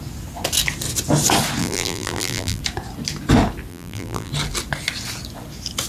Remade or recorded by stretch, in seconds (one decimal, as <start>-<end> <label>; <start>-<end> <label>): 0.0-1.6 recorded; 1.6-2.6 remade; 2.6-3.7 recorded; 3.7-4.3 remade; 4.3-5.9 recorded

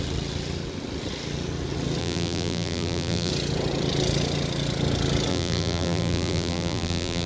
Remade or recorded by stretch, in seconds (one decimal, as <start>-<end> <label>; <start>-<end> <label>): 0.0-2.0 recorded; 2.0-3.3 remade; 3.3-5.3 recorded; 5.3-7.3 remade

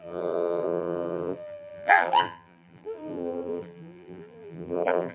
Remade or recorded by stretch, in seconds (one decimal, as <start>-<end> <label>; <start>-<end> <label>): 0.0-5.1 remade

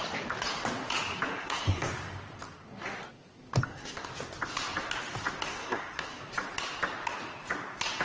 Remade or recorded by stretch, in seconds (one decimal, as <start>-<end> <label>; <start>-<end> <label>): 0.0-1.4 recorded; 1.4-1.9 remade; 1.9-3.6 recorded; 3.6-4.1 remade; 4.1-5.5 recorded; 5.5-6.2 remade; 6.2-8.0 recorded